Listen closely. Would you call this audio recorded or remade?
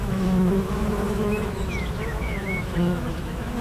remade